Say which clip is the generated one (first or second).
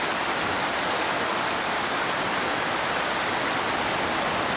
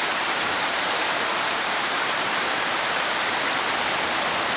second